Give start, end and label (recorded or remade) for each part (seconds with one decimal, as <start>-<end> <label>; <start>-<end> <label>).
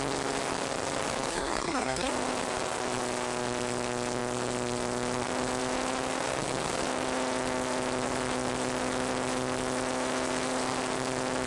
0.0-1.3 recorded; 1.3-2.1 remade; 2.1-11.5 recorded